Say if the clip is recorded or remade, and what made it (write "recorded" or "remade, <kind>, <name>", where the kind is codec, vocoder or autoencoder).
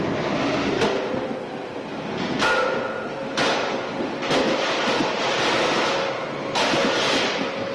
recorded